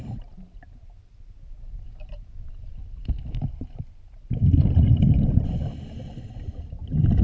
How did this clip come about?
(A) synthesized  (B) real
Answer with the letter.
B